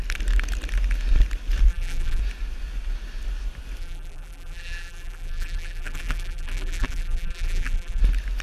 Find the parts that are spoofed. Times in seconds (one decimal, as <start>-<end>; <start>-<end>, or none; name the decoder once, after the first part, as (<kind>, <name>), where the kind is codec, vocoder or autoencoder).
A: 1.7-2.2 (vocoder, BigVGAN v2); 3.8-8.0